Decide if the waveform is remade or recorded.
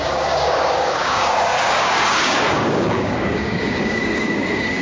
remade